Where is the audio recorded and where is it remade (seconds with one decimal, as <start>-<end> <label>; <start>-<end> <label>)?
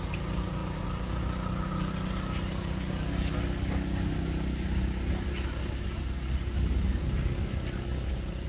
0.0-8.5 recorded